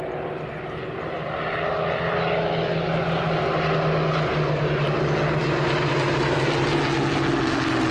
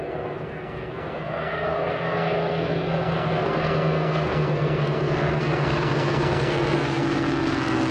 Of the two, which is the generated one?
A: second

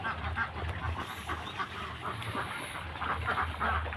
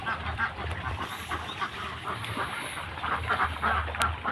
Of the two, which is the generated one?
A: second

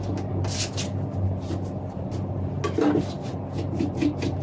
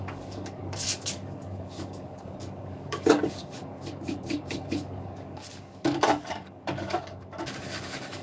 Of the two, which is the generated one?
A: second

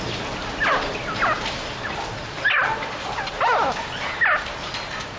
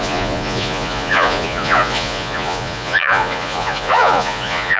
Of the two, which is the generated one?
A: second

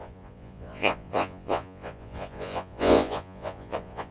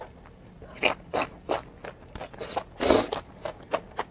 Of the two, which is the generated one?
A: first